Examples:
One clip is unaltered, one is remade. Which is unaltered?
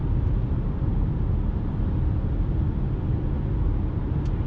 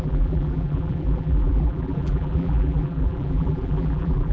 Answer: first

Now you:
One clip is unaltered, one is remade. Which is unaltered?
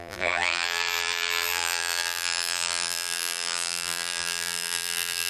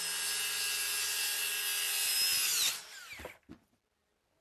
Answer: second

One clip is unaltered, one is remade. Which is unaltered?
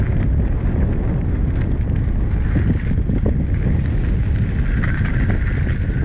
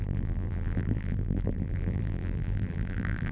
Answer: first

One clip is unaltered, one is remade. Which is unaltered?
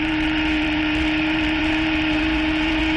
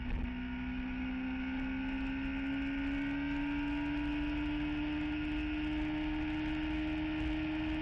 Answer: second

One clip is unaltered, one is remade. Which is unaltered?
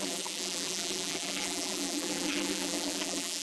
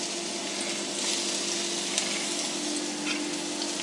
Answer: second